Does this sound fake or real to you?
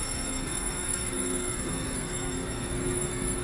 fake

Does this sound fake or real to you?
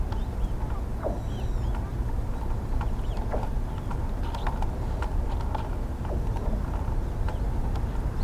real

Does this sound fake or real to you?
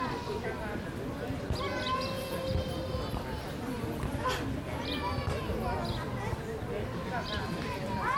real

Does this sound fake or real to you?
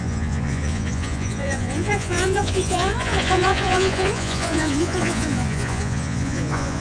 fake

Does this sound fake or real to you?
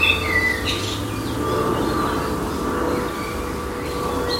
real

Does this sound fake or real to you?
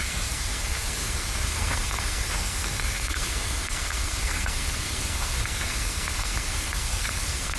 fake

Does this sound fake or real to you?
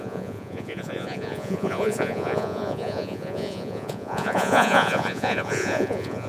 fake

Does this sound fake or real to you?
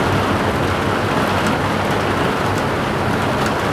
real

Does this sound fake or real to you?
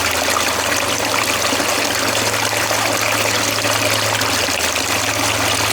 real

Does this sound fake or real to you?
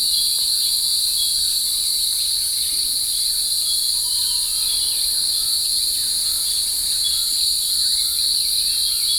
real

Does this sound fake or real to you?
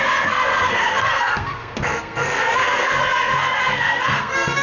fake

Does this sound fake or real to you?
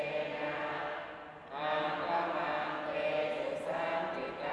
real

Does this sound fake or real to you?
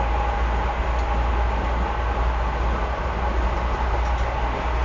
real